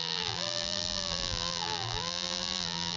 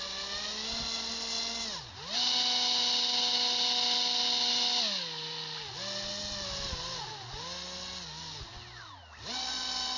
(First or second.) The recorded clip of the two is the second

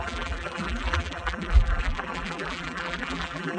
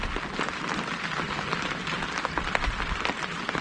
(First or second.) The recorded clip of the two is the second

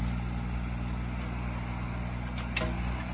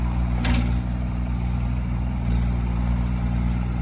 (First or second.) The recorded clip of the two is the first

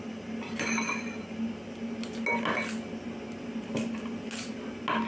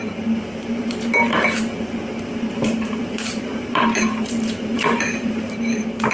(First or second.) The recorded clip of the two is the first